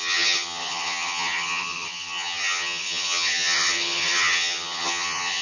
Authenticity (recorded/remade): remade